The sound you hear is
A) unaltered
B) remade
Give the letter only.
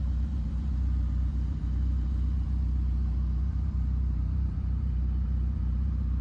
B